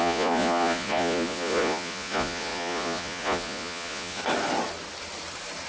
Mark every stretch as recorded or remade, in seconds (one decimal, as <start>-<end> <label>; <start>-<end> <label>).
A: 0.0-4.2 remade; 4.2-5.7 recorded